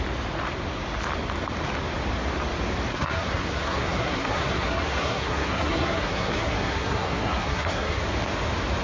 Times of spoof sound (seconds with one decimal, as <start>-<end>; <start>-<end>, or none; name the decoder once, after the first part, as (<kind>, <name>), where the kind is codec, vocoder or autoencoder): 2.9-8.0 (codec, SNAC)